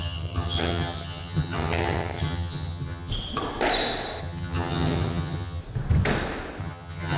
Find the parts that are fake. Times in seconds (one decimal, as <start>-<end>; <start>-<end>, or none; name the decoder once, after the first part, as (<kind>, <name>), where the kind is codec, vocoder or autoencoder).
0.0-3.1 (vocoder, HiFi-GAN); 4.2-5.6; 6.6-7.2